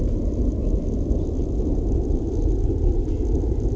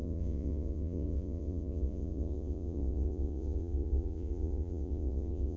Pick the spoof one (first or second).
second